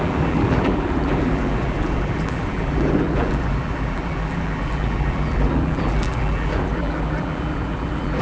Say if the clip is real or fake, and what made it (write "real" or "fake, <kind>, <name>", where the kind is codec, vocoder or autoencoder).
fake, vocoder, BigVGAN v2